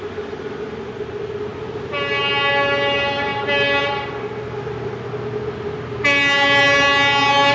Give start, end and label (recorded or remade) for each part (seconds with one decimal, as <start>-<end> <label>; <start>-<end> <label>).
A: 0.0-7.5 recorded